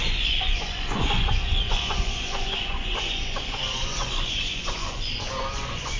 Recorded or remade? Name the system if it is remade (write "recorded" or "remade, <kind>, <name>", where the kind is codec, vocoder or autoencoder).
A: remade, vocoder, Vocos